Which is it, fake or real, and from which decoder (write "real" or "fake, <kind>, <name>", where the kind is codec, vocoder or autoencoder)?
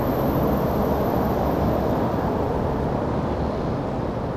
real